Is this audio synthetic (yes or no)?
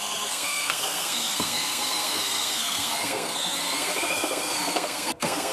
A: yes